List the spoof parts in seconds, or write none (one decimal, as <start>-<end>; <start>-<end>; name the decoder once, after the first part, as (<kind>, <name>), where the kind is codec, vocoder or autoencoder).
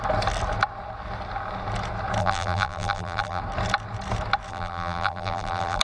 2.2-3.4 (vocoder, BigVGAN v2); 4.5-5.8